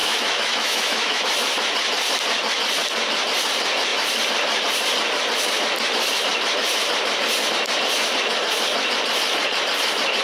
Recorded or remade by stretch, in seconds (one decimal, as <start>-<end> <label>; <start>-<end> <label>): 0.0-1.2 remade; 1.2-10.2 recorded